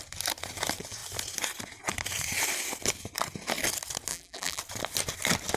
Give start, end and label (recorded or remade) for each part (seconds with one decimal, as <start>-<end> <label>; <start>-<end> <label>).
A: 0.0-4.1 recorded; 4.1-4.6 remade; 4.6-5.6 recorded